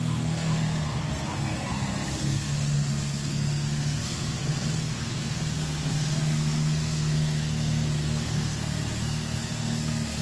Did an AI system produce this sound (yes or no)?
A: yes